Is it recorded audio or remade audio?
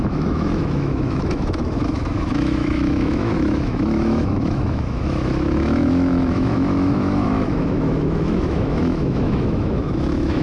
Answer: remade